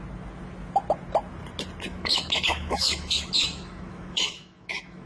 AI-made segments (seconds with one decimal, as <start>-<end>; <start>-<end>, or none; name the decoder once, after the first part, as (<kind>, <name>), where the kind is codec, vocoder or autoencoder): 1.9-5.1 (autoencoder, DAC-VAE)

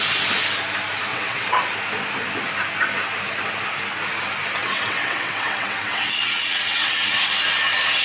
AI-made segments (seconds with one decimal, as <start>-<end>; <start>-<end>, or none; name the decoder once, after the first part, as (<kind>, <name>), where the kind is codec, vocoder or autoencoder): 1.1-1.6 (vocoder, WaveNeXt); 4.6-7.3

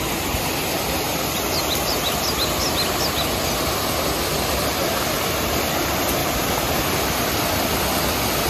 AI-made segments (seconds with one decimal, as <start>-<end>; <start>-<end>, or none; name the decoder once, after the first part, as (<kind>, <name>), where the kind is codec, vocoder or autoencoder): none

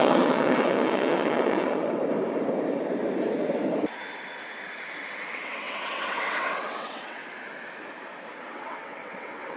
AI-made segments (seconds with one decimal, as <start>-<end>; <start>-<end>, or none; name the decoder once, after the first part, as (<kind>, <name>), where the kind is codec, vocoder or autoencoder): 0.0-2.0 (vocoder, WaveNeXt); 5.1-7.2; 8.5-9.6

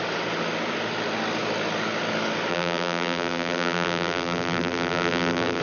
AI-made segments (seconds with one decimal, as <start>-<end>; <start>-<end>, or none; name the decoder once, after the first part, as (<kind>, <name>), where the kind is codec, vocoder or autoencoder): 2.5-5.6 (vocoder, BigVGAN v2)

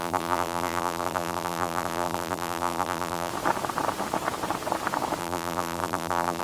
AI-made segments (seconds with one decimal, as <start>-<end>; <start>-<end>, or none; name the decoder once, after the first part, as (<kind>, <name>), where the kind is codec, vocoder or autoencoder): 0.0-3.3 (vocoder, BigVGAN v2); 5.2-6.4

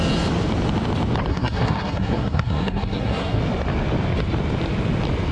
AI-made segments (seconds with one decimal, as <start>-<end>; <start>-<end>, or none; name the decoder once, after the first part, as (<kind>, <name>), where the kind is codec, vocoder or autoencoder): 1.3-3.4 (codec, SNAC)

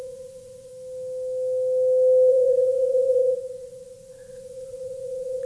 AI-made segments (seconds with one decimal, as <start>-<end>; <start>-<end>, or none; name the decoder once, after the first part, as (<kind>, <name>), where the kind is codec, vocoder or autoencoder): 0.0-0.7 (vocoder, Vocos); 2.3-5.5